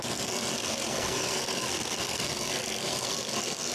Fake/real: fake